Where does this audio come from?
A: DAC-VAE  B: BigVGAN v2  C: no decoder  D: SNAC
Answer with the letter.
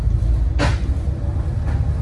C